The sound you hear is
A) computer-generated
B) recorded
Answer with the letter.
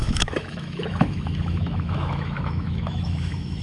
A